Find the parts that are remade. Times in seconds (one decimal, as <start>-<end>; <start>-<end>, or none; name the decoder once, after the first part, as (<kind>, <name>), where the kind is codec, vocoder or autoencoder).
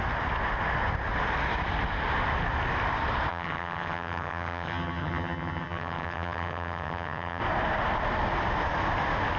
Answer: 3.3-7.4 (vocoder, HiFi-GAN)